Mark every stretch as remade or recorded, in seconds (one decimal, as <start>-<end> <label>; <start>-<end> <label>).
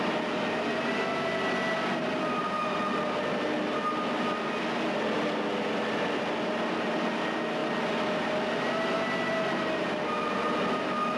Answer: 0.0-11.2 recorded